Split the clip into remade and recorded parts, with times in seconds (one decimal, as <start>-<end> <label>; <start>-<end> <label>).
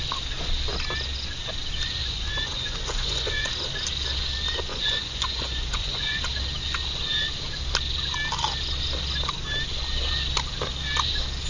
0.0-2.0 recorded; 2.0-3.5 remade; 3.5-4.7 recorded; 4.7-6.2 remade; 6.2-11.5 recorded